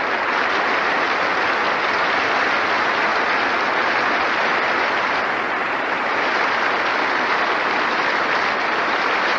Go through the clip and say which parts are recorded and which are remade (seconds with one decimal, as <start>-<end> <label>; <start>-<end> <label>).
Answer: 0.0-9.4 recorded